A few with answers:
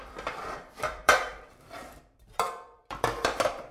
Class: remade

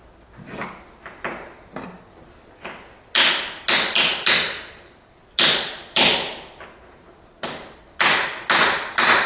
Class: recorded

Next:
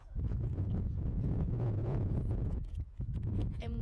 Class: remade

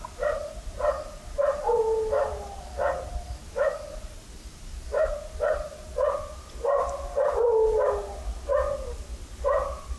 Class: recorded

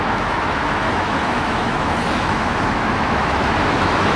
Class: remade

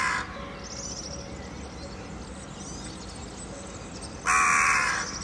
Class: recorded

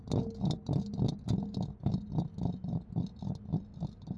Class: recorded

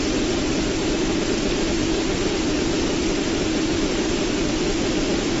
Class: recorded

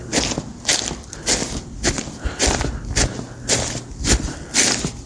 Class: recorded